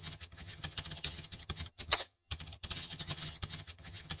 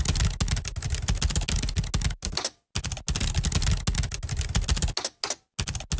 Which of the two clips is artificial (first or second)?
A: first